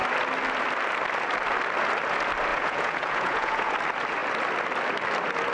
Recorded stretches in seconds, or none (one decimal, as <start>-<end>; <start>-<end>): 0.0-2.5; 3.7-5.5